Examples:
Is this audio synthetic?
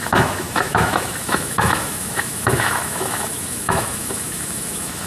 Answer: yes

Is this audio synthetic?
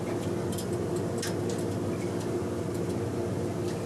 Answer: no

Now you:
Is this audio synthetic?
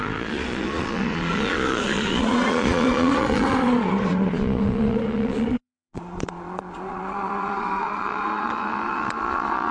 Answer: yes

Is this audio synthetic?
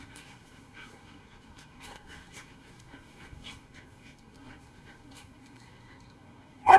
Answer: yes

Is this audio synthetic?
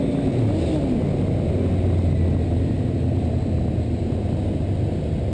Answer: no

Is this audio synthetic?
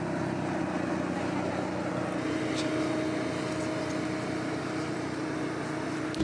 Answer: no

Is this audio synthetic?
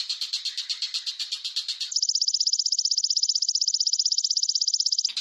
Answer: no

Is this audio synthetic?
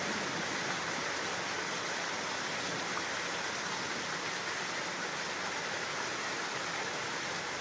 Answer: no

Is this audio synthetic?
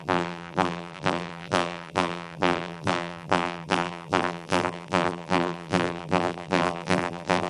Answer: yes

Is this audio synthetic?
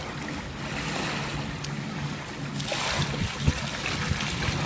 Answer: no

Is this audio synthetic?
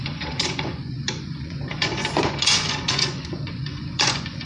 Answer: yes